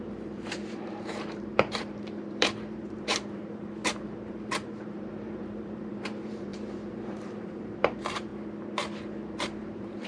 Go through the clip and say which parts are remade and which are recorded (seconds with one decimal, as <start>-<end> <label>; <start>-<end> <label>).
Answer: 0.0-8.3 remade; 8.3-9.1 recorded; 9.1-10.1 remade